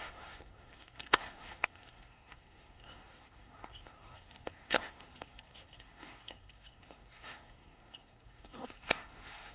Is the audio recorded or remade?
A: remade